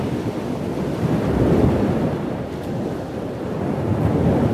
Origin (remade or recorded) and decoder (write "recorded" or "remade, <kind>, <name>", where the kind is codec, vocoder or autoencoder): recorded